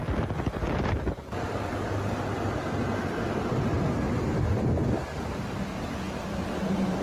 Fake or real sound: real